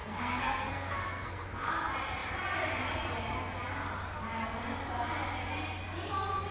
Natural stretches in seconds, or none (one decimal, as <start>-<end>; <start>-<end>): 1.7-6.5